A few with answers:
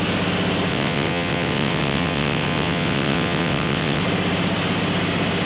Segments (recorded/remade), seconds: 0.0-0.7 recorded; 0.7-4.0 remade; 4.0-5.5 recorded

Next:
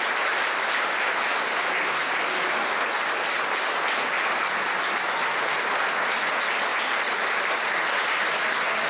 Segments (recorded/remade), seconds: 0.0-8.9 recorded

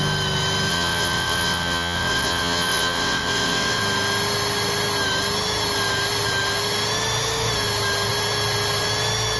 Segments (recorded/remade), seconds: 0.0-0.7 recorded; 0.7-3.8 remade; 3.8-9.4 recorded

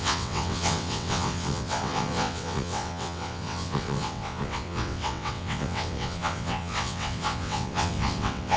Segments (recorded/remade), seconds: 0.0-8.6 remade